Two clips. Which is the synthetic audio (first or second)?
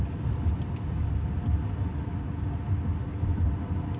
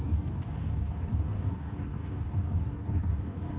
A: second